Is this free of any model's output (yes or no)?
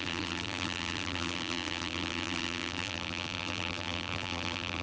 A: no